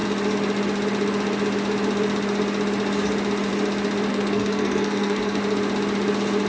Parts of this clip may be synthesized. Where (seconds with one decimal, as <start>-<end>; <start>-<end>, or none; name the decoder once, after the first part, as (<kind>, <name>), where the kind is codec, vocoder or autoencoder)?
4.1-5.4 (codec, SNAC)